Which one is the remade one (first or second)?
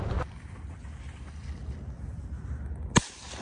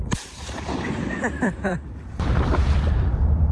second